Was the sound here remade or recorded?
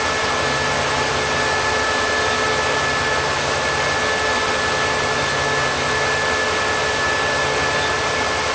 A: recorded